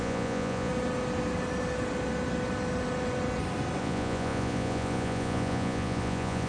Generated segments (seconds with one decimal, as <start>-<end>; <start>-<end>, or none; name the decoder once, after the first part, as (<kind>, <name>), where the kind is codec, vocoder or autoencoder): 0.0-0.7 (vocoder, Vocos); 3.8-6.5